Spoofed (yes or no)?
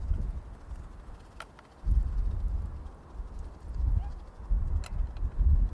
no